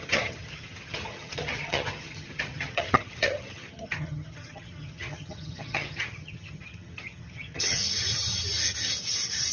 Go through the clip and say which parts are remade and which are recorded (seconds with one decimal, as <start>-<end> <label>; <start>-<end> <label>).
0.0-7.8 remade; 7.8-9.5 recorded